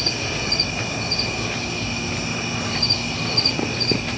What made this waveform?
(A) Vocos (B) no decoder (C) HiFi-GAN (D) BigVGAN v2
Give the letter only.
B